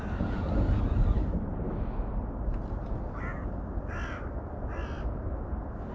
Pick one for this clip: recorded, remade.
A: recorded